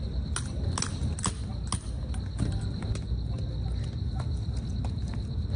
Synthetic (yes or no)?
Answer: no